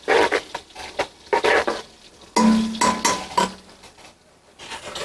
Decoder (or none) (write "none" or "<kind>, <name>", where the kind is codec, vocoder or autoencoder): none